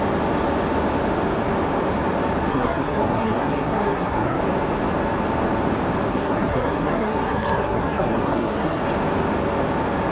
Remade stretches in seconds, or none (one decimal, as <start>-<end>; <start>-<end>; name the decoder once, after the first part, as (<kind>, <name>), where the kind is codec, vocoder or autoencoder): 2.5-4.4 (codec, SNAC); 6.1-8.8